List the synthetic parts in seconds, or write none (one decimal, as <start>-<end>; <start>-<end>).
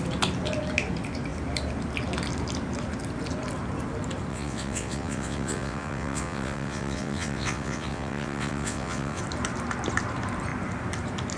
4.3-9.2